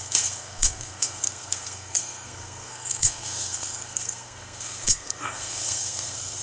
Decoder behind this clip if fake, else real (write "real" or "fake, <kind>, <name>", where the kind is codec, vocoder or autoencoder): fake, codec, SNAC